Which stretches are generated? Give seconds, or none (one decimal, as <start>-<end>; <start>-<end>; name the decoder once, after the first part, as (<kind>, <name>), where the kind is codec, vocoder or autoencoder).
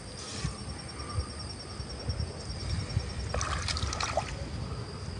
0.0-0.6 (vocoder, BigVGAN v2); 3.7-5.2